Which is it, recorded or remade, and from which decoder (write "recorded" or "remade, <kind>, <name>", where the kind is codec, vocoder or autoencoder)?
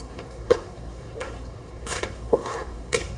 remade, codec, SNAC